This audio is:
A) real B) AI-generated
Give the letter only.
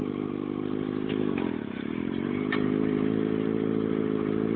A